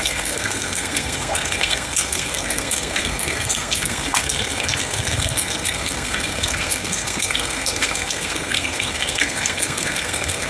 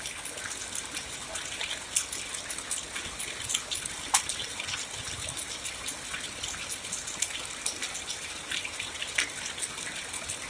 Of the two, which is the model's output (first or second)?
first